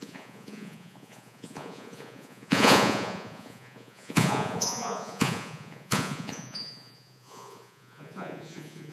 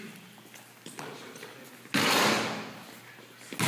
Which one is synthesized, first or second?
first